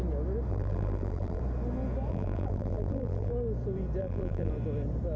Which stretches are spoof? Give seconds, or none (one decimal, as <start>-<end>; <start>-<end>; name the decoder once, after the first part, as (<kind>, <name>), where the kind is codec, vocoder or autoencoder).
0.5-1.4 (vocoder, BigVGAN v2); 2.1-3.3; 4.0-4.5